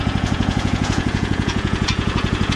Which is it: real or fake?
fake